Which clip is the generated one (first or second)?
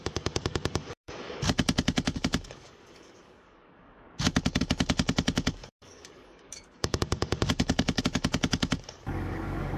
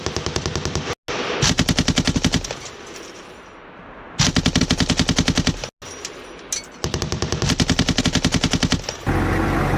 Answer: first